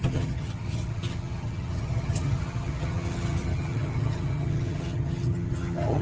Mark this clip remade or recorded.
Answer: remade